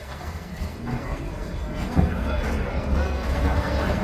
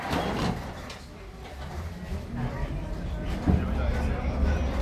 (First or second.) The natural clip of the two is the second